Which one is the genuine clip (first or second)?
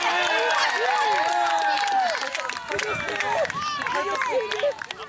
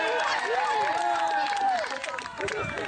first